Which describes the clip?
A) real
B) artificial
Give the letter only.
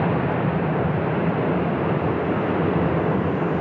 A